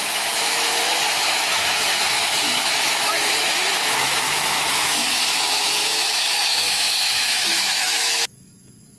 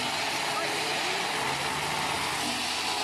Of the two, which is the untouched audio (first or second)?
second